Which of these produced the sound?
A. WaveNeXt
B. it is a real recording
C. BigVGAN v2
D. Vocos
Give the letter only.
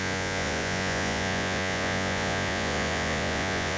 D